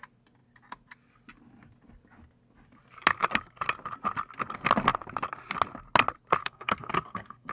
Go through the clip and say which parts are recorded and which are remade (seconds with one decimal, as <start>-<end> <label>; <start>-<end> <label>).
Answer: 0.0-6.4 recorded; 6.4-7.5 remade